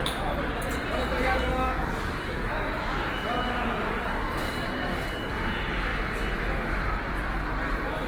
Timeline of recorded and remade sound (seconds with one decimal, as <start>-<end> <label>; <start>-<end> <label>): 0.0-1.2 recorded; 1.2-5.3 remade; 5.3-8.1 recorded

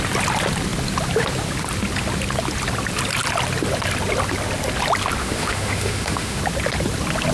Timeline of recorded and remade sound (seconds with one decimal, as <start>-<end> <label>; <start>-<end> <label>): 0.0-5.2 recorded; 5.2-6.4 remade; 6.4-7.3 recorded

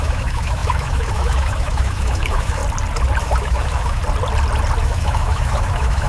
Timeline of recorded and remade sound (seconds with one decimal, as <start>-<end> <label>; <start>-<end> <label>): 0.0-2.6 remade; 2.6-3.2 recorded; 3.2-4.0 remade; 4.0-4.8 recorded; 4.8-6.1 remade

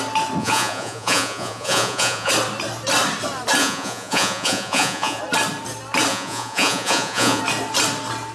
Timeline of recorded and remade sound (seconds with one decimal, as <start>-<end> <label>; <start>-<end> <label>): 0.0-0.4 recorded; 0.4-2.3 remade; 2.3-3.6 recorded; 3.6-5.2 remade; 5.2-6.1 recorded; 6.1-7.4 remade; 7.4-8.3 recorded

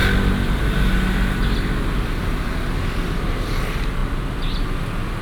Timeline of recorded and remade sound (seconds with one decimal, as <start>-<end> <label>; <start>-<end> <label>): 0.0-5.2 recorded

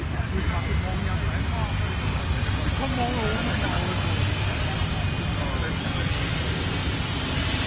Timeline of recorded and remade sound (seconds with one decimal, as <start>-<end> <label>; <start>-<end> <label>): 0.0-5.8 recorded; 5.8-6.3 remade; 6.3-7.7 recorded